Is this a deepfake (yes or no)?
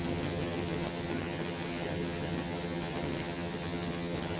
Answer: yes